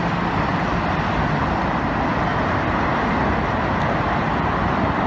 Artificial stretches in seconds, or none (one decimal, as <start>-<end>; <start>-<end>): none